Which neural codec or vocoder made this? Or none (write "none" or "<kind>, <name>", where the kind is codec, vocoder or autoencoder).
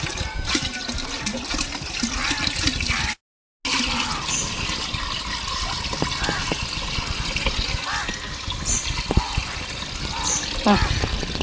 none